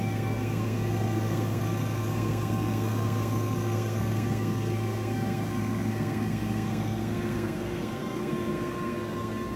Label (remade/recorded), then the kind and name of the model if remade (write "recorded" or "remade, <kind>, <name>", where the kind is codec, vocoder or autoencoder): remade, codec, SNAC